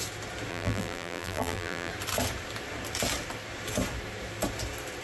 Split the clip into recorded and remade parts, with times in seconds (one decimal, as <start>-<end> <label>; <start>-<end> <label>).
0.0-0.5 recorded; 0.5-1.9 remade; 1.9-5.0 recorded